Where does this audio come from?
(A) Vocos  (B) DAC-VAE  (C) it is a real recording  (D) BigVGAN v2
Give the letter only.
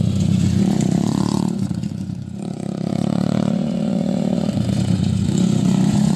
A